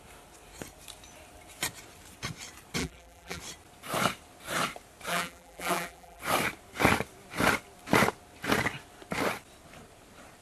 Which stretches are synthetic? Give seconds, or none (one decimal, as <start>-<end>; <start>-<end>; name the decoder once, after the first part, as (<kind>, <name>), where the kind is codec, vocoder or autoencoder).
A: 2.8-3.4 (vocoder, BigVGAN v2); 5.1-6.2

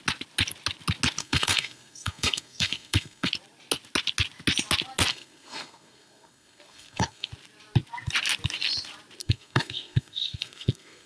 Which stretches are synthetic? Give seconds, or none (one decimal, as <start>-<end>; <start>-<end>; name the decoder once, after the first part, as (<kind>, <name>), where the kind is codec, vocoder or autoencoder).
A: 1.2-3.3 (codec, SNAC); 5.1-7.3; 9.2-11.1

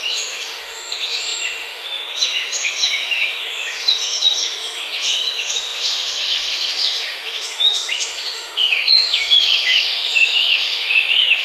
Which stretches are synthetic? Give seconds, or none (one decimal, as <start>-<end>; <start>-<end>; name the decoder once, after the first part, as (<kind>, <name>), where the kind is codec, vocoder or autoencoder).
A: 0.0-11.4 (autoencoder, DAC-VAE)

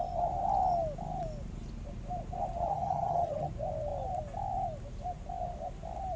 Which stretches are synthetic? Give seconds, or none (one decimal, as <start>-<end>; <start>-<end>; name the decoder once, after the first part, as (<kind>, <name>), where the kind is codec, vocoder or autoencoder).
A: 2.7-3.5 (vocoder, HiFi-GAN)

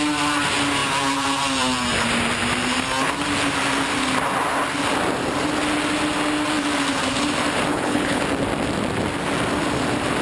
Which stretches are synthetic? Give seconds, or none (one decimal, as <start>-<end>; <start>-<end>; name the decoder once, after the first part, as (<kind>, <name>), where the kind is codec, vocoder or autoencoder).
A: 7.7-8.2 (codec, HILCodec)

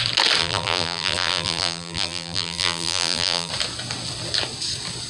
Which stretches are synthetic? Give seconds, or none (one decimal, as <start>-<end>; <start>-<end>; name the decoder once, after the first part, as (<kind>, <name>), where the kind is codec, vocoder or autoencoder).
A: 0.4-3.5 (vocoder, BigVGAN v2)